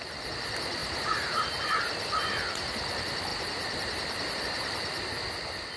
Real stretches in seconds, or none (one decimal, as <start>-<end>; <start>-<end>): 0.0-0.8; 1.6-3.3; 4.4-5.8